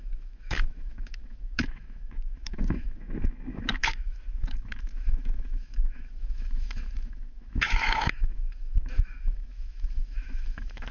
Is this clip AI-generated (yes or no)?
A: yes